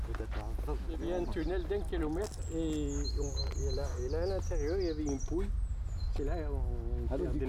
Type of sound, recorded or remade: recorded